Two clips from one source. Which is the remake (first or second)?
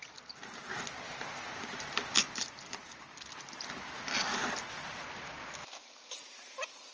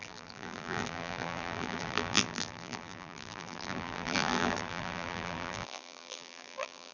second